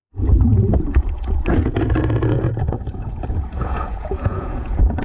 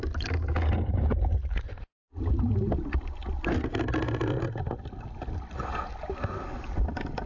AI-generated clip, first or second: first